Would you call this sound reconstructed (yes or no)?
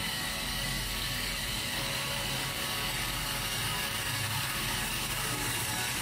yes